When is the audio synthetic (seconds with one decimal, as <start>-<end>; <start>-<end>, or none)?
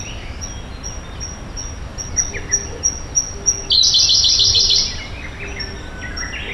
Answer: none